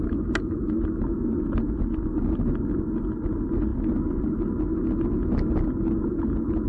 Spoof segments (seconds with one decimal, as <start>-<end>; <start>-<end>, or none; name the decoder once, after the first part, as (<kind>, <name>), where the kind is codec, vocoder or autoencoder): none